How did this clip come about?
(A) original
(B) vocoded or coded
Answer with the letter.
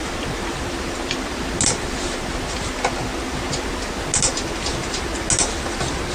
A